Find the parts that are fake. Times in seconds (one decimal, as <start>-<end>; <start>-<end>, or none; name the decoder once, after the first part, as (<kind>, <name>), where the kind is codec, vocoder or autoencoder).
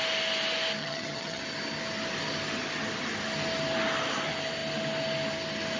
0.8-1.4 (vocoder, HiFi-GAN)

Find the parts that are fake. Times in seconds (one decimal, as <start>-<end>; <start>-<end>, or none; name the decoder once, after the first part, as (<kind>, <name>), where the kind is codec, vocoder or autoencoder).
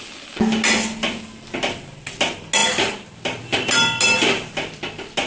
none